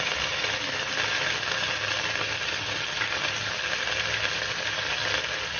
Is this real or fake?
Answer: real